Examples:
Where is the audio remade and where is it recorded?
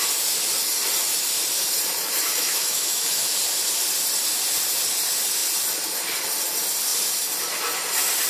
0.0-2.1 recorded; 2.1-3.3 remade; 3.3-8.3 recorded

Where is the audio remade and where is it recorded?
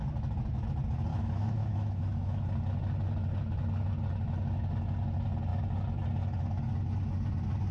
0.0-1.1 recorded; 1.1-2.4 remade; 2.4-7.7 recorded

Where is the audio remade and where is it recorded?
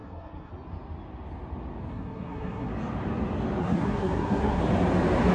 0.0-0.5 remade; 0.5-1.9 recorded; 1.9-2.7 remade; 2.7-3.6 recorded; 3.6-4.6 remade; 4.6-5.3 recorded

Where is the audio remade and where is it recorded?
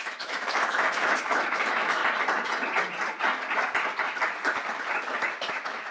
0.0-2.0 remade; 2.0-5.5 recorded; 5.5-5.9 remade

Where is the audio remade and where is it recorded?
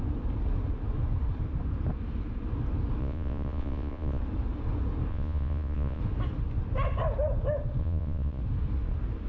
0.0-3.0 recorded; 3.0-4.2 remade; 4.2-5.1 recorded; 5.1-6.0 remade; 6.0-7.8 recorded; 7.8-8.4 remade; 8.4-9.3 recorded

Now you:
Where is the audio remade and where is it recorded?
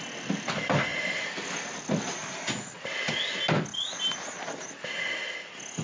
0.0-5.8 recorded